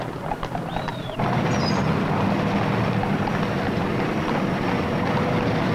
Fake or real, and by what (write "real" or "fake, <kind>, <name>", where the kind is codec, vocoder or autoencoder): real